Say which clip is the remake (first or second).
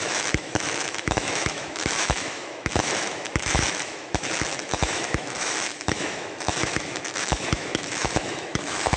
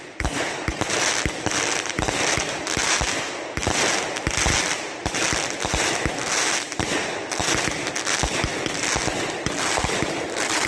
first